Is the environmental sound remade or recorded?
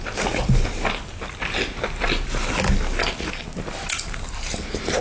recorded